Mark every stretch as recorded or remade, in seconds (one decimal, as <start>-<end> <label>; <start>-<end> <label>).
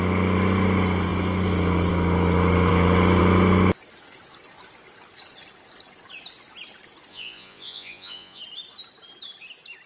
0.0-7.1 recorded; 7.1-8.4 remade; 8.4-9.9 recorded